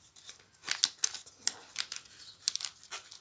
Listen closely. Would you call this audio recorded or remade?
recorded